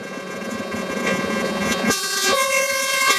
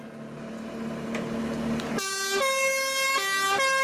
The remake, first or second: first